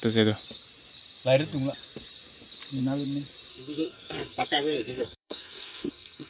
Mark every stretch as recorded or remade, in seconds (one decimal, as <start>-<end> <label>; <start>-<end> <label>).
0.0-3.5 recorded; 3.5-6.3 remade